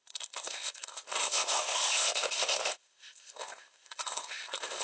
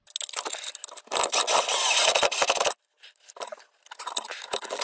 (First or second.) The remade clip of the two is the first